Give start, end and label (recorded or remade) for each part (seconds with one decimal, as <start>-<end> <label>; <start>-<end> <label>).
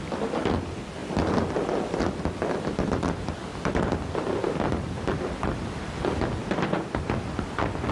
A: 0.0-3.5 recorded; 3.5-6.5 remade; 6.5-7.9 recorded